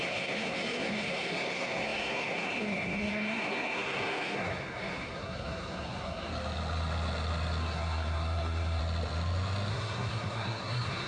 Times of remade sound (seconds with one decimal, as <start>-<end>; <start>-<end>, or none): 0.0-6.3; 7.6-8.8; 9.7-11.1